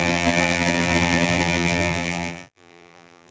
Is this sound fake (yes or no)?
yes